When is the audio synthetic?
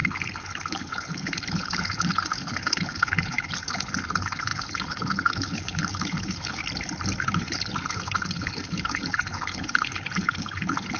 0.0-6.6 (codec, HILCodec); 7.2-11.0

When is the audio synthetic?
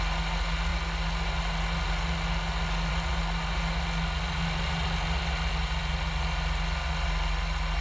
none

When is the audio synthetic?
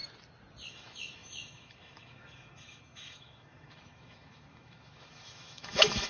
0.7-6.1 (autoencoder, DAC-VAE)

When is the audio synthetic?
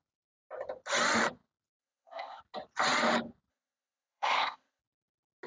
1.8-2.4 (codec, ZipCodec); 3.5-4.8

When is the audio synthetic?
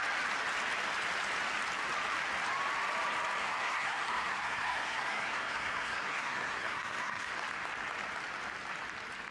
3.4-7.3 (codec, SNAC)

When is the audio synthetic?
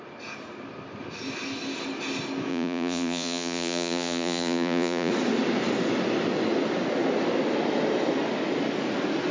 2.5-5.1 (vocoder, Vocos)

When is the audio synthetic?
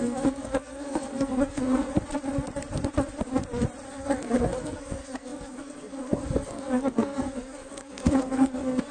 0.0-1.9 (codec, SNAC); 3.9-8.9